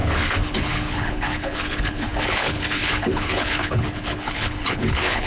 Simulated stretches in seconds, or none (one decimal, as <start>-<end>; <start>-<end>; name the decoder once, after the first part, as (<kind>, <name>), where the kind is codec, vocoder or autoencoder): 0.0-5.3 (codec, HILCodec)

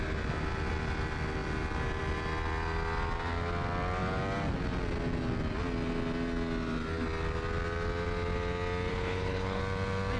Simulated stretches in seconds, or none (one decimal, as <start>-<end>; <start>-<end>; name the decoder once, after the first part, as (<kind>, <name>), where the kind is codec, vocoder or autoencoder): 8.9-9.6 (codec, HILCodec)

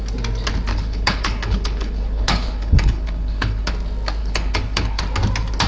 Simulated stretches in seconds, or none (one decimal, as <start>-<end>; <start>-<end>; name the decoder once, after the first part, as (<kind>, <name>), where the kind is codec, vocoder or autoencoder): 0.7-3.7 (codec, HILCodec); 4.2-5.0

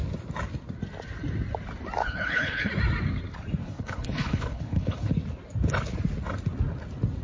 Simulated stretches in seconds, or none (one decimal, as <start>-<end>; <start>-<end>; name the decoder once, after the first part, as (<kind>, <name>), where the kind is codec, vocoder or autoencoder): 2.0-2.7 (codec, HILCodec); 3.6-5.1